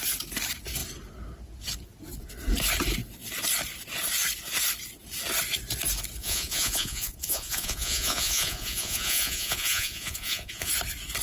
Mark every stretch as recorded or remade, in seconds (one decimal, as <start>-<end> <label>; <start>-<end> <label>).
0.0-6.2 recorded; 6.2-10.7 remade; 10.7-11.2 recorded